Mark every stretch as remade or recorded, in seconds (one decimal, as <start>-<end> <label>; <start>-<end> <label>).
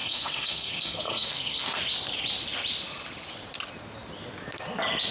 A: 0.0-1.8 remade; 1.8-5.1 recorded